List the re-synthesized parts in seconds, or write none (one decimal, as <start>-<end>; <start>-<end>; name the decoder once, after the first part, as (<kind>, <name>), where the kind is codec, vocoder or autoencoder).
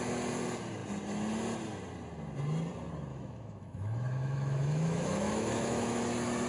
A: 3.1-6.0 (autoencoder, DAC-VAE)